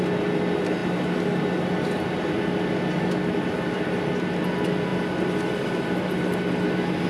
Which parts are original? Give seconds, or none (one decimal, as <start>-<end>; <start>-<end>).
0.0-7.1